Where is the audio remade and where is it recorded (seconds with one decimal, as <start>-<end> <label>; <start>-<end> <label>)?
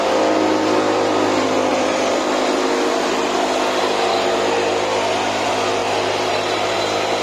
0.0-1.7 recorded; 1.7-2.2 remade; 2.2-5.8 recorded; 5.8-6.8 remade; 6.8-7.2 recorded